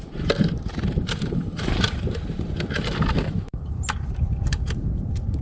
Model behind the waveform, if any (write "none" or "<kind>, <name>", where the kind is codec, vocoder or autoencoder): vocoder, BigVGAN v2